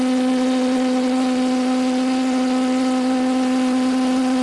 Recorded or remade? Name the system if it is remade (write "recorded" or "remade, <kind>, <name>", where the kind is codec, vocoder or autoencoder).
recorded